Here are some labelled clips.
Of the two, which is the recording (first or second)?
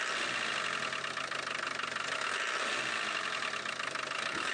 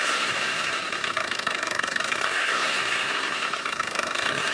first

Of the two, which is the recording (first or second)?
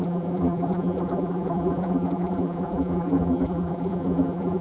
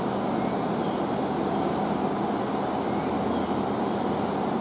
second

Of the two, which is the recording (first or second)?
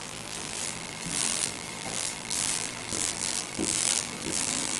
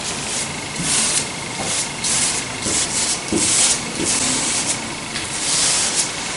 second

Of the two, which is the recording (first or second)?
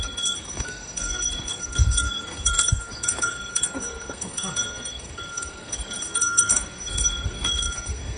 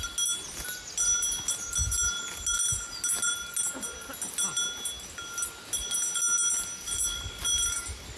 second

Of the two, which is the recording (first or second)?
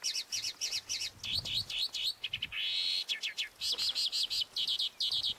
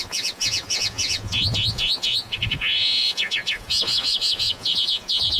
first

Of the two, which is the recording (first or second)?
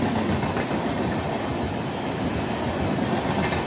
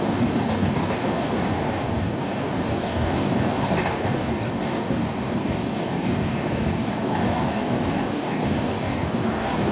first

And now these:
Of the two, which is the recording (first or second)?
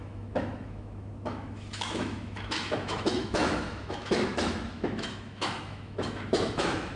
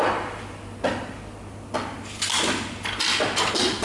second